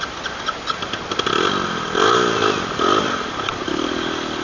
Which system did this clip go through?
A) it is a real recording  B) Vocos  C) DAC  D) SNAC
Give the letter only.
A